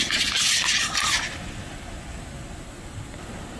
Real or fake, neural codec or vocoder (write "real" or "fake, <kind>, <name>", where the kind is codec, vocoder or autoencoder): real